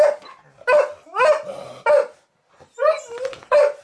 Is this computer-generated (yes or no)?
no